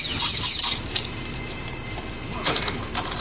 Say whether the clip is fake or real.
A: real